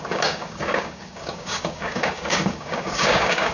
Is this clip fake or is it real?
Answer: fake